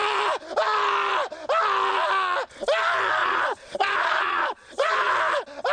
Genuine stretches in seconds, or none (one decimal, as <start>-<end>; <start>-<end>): 0.0-3.2; 5.1-5.7